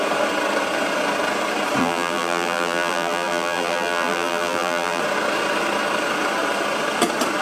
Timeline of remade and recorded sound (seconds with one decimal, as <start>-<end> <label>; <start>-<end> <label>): 0.0-1.8 recorded; 1.8-5.0 remade; 5.0-7.4 recorded